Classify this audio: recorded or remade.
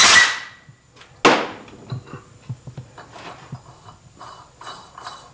recorded